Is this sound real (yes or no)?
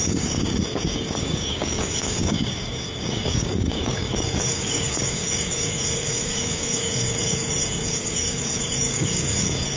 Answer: no